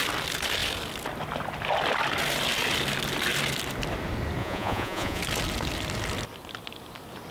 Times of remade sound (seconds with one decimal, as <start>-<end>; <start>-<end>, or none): 4.4-5.2